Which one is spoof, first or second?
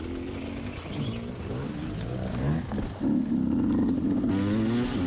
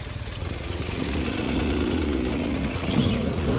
second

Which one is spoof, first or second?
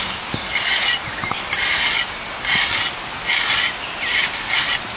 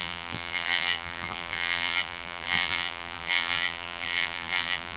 second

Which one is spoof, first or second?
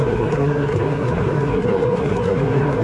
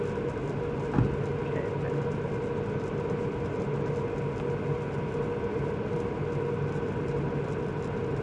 first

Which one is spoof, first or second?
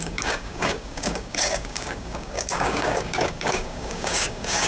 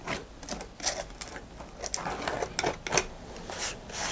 first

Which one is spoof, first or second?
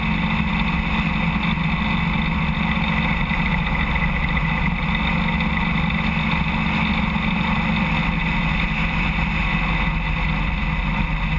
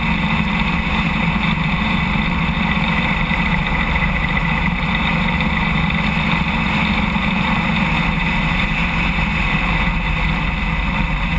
second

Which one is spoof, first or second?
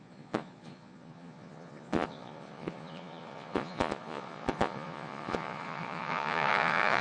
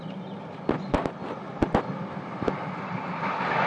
first